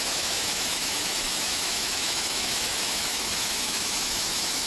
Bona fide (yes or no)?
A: no